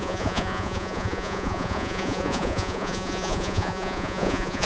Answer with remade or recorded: remade